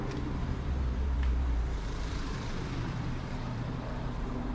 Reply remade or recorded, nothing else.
remade